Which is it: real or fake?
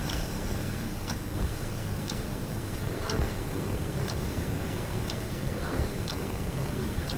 fake